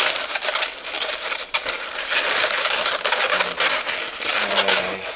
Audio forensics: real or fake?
real